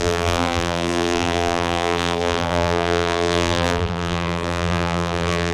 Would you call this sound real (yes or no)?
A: no